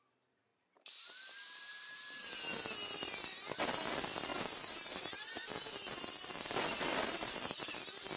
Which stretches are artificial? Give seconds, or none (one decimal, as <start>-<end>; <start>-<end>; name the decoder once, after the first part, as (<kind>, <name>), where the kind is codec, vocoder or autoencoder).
0.5-2.4 (vocoder, BigVGAN v2); 4.3-6.0; 6.9-7.5